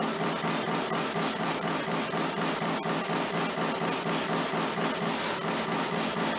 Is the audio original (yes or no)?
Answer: yes